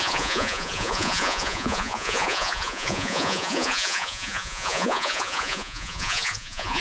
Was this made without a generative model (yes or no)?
no